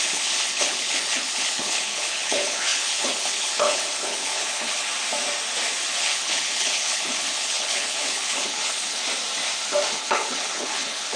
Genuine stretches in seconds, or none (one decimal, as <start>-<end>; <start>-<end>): 4.9-6.0; 9.0-9.9